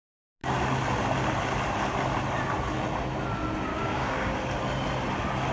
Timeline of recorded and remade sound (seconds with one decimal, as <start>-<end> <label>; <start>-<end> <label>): 0.0-3.7 recorded; 3.7-4.3 remade; 4.3-5.5 recorded